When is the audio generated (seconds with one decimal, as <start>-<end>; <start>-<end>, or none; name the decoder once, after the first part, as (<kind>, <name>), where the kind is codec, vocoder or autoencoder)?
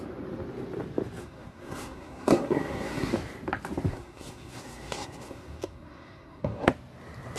1.2-3.1 (codec, SNAC); 3.9-6.7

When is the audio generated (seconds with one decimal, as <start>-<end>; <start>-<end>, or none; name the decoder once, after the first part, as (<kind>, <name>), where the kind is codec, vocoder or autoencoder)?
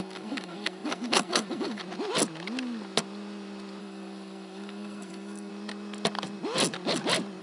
0.0-1.8 (codec, SNAC); 3.8-5.5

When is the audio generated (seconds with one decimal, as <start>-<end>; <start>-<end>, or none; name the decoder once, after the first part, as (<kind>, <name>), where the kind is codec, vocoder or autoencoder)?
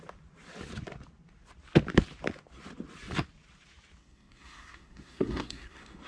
4.0-6.1 (codec, SNAC)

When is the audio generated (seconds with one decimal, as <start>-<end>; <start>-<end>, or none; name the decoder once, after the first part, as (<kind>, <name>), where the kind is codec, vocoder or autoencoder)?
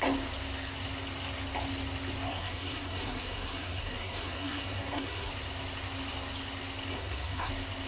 2.3-5.3 (codec, SNAC); 6.9-7.5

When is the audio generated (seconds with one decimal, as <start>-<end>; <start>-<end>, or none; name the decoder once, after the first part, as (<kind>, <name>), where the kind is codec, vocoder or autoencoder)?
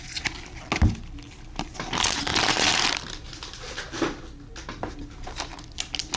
none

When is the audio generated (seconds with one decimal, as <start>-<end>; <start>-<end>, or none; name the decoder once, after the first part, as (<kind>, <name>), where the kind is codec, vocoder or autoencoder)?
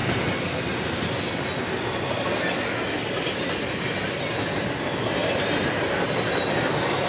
none